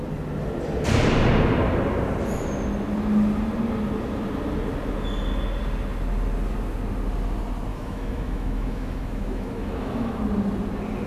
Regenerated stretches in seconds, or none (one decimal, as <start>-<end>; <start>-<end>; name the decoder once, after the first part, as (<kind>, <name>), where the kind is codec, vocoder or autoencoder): 7.7-10.2 (autoencoder, DAC-VAE)